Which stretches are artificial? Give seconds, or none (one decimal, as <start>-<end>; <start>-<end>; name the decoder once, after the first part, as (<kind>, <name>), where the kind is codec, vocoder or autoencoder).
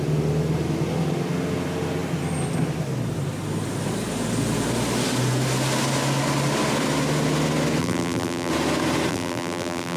7.8-8.5 (vocoder, BigVGAN v2); 9.1-10.0